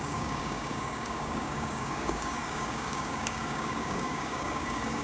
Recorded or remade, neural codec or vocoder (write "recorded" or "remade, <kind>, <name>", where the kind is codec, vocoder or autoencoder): remade, codec, DAC